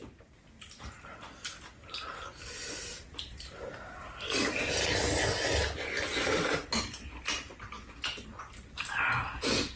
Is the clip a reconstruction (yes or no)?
no